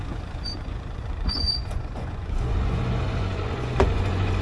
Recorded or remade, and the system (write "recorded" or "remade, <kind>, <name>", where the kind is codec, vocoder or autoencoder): remade, vocoder, Vocos